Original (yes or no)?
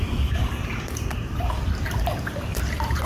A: no